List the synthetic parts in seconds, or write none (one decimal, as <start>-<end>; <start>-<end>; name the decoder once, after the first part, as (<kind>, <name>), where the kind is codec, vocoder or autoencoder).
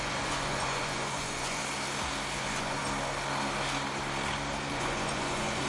0.0-1.6 (vocoder, Vocos); 2.4-2.8; 4.7-5.7